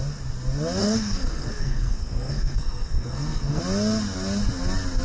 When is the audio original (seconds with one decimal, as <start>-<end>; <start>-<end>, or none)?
0.0-0.8; 3.6-5.0